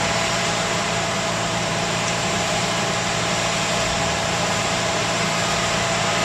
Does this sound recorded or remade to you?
remade